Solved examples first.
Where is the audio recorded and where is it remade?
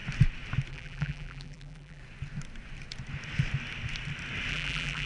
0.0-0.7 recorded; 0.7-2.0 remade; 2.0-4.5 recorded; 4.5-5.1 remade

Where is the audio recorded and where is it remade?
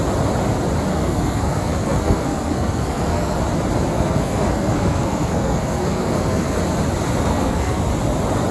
0.0-0.9 recorded; 0.9-3.4 remade; 3.4-3.9 recorded; 3.9-6.6 remade; 6.6-7.3 recorded; 7.3-7.8 remade; 7.8-8.5 recorded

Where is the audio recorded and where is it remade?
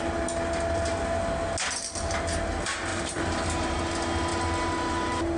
0.0-2.9 recorded; 2.9-3.8 remade; 3.8-5.4 recorded